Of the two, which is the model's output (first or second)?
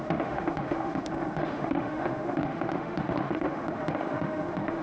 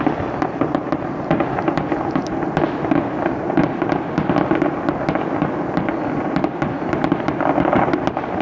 first